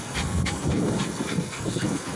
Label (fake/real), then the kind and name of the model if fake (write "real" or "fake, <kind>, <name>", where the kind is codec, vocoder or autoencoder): fake, codec, SNAC